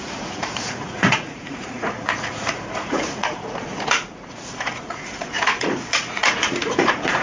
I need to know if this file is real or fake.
fake